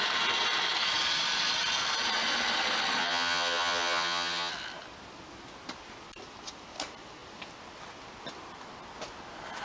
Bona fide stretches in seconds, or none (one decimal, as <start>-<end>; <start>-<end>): 0.0-3.0; 4.5-9.6